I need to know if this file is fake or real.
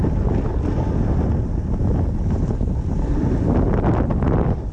real